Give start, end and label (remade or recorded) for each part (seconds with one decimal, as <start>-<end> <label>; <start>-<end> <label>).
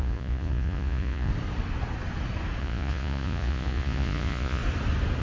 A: 0.0-1.3 remade; 1.3-2.6 recorded; 2.6-4.6 remade; 4.6-5.2 recorded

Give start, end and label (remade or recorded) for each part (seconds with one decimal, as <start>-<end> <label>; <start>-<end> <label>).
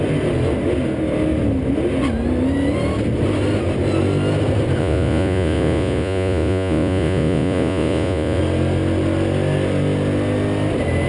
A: 0.0-4.8 recorded; 4.8-8.4 remade; 8.4-11.1 recorded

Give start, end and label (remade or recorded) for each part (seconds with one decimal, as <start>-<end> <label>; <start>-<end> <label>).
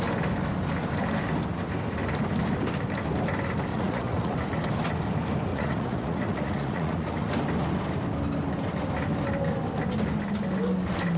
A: 0.0-3.7 recorded; 3.7-4.3 remade; 4.3-5.5 recorded; 5.5-7.3 remade; 7.3-11.2 recorded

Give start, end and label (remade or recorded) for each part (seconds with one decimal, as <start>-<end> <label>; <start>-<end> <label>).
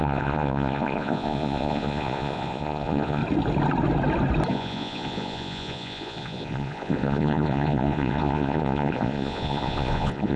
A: 0.0-3.2 remade; 3.2-4.5 recorded; 4.5-10.4 remade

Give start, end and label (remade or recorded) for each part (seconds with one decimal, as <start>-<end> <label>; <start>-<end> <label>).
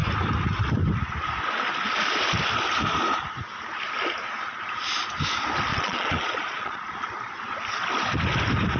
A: 0.0-5.7 recorded; 5.7-7.1 remade; 7.1-8.8 recorded